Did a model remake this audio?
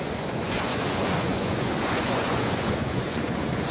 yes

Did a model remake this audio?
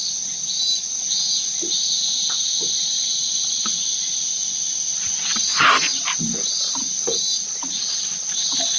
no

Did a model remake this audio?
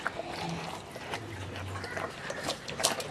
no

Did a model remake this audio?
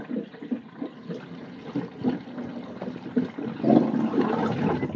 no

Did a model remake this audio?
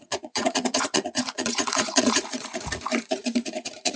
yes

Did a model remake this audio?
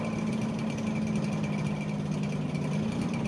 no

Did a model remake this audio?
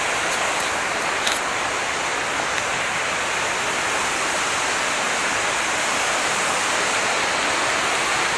no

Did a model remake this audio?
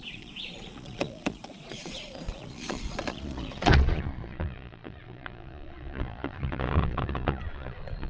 yes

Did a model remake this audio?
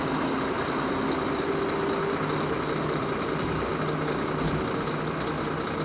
no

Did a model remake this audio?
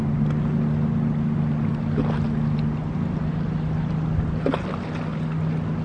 no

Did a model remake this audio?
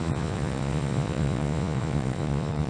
yes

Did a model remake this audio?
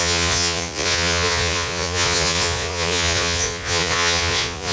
yes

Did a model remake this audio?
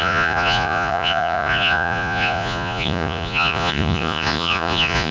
yes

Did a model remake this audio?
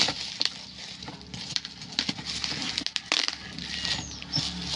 no